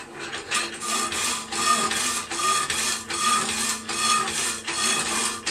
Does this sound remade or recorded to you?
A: recorded